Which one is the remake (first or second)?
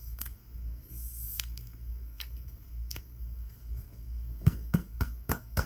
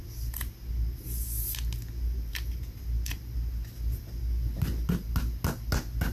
first